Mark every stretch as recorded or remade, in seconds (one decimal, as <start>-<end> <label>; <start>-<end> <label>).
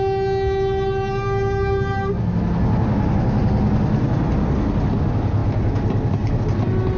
0.0-7.0 recorded